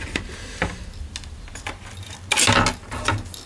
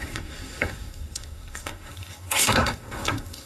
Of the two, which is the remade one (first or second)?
second